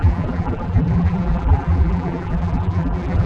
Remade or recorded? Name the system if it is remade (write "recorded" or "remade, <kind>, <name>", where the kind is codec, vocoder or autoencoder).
remade, vocoder, BigVGAN v2